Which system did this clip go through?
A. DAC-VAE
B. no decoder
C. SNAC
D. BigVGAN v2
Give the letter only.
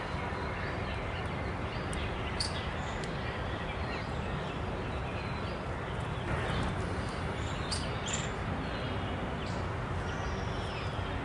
B